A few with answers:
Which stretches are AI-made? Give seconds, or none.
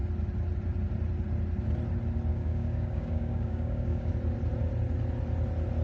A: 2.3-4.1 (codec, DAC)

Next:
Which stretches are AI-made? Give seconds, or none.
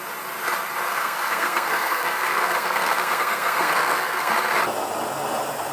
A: 0.9-4.3 (codec, SNAC)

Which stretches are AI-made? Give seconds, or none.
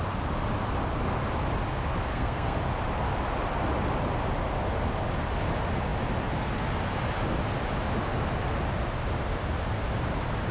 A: 2.1-2.6 (codec, SNAC)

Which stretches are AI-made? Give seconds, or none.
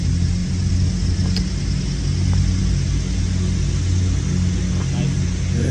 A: none